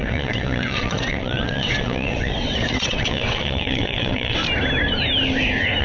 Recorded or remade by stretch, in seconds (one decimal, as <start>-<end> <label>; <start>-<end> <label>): 0.0-4.4 remade; 4.4-5.8 recorded